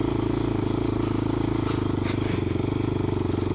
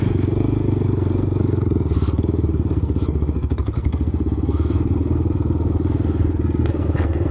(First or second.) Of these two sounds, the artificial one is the second